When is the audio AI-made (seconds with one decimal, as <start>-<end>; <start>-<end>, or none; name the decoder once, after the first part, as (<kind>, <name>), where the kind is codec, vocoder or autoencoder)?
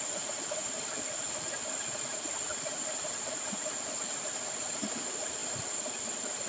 5.4-6.5 (vocoder, BigVGAN v2)